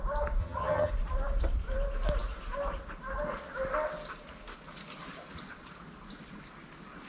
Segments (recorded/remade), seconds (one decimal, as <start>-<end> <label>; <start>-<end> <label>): 0.0-0.4 recorded; 0.4-0.9 remade; 0.9-7.1 recorded